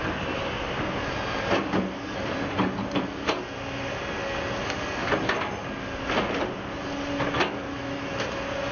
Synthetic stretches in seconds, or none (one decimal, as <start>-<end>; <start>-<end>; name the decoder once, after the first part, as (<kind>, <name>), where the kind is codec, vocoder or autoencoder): none